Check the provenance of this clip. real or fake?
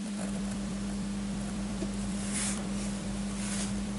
fake